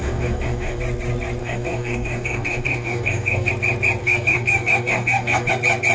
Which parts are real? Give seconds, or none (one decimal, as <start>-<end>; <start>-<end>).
0.8-1.4; 3.5-4.0; 5.5-5.9